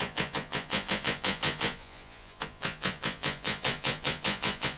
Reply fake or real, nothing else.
fake